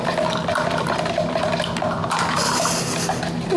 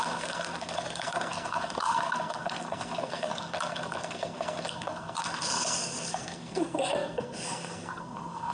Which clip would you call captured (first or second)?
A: first